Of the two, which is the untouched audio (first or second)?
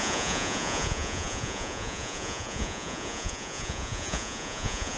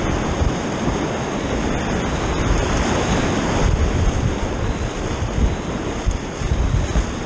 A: second